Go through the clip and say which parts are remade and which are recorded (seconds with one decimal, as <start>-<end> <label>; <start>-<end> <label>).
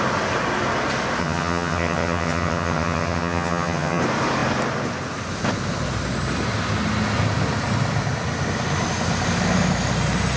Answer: 0.0-1.2 recorded; 1.2-4.0 remade; 4.0-10.4 recorded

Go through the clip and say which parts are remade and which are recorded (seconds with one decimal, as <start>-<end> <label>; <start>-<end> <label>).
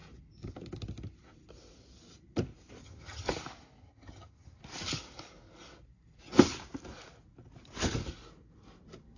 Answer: 0.0-2.8 recorded; 2.8-3.3 remade; 3.3-3.8 recorded; 3.8-4.6 remade; 4.6-9.2 recorded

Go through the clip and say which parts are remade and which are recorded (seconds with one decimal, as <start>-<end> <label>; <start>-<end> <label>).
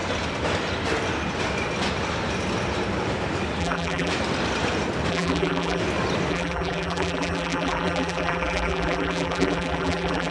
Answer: 0.0-3.6 recorded; 3.6-4.1 remade; 4.1-5.1 recorded; 5.1-5.8 remade; 5.8-6.3 recorded; 6.3-10.3 remade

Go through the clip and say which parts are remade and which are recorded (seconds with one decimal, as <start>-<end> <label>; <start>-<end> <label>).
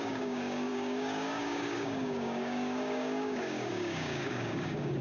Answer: 0.0-5.0 remade